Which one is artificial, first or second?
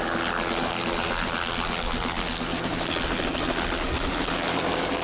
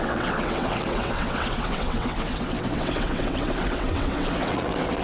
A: second